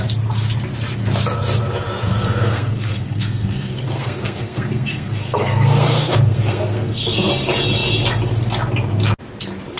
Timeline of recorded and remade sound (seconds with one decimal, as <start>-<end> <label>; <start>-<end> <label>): 0.0-2.1 recorded; 2.1-7.3 remade; 7.3-9.8 recorded